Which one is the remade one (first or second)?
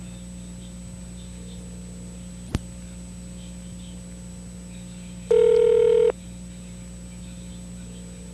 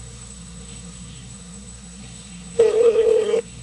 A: second